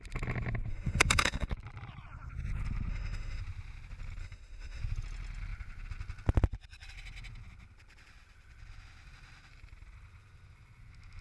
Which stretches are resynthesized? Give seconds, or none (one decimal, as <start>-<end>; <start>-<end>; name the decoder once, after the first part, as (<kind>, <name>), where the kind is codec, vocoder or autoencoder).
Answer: 0.7-1.5 (autoencoder, DAC-VAE); 2.9-3.4; 4.2-4.8